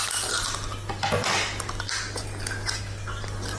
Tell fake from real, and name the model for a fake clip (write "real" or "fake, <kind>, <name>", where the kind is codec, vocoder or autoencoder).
real